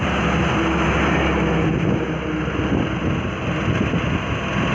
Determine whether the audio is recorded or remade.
recorded